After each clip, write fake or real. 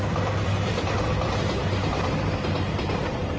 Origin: real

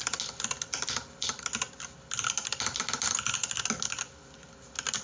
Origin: real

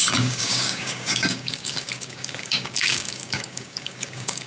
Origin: fake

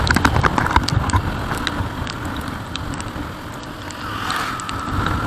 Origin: real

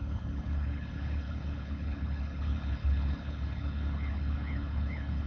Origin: fake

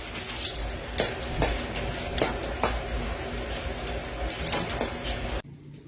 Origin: real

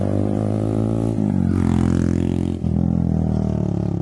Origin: real